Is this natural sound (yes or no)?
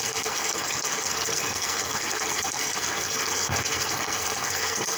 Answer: no